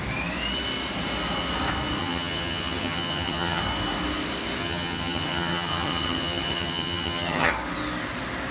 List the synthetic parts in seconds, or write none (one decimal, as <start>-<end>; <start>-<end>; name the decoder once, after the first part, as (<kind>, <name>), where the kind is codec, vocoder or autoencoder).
2.0-3.6 (vocoder, HiFi-GAN); 4.6-7.5